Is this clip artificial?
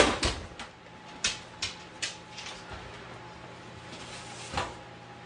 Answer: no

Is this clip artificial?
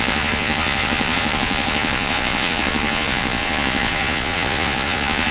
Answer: yes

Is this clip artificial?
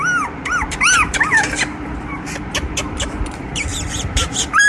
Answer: yes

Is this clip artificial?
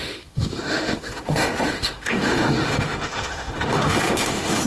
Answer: yes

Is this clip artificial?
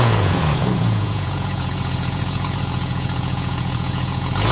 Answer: yes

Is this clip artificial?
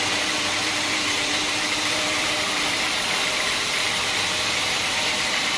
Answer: yes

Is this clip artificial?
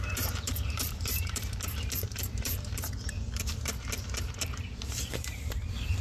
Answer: yes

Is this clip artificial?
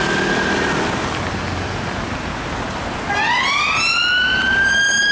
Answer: no